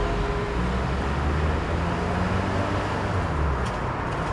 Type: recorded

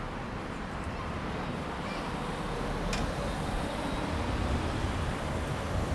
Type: recorded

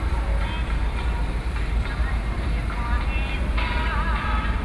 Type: recorded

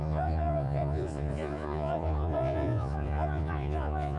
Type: remade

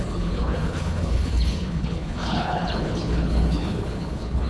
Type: remade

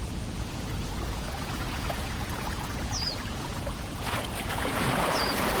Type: remade